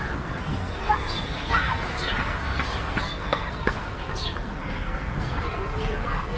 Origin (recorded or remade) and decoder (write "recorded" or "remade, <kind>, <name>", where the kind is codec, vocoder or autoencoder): remade, codec, SNAC